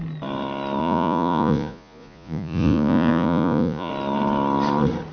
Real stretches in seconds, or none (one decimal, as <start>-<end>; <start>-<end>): 0.0-0.8; 3.9-5.1